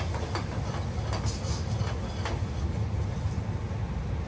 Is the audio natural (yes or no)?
yes